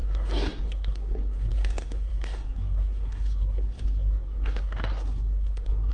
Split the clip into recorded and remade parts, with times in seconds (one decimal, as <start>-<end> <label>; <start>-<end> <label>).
0.0-5.9 remade